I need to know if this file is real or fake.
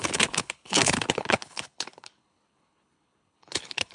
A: fake